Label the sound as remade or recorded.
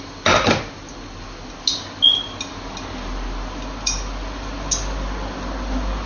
recorded